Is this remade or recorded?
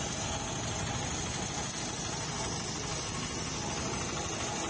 recorded